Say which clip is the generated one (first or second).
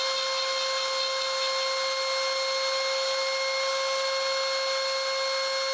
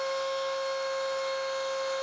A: second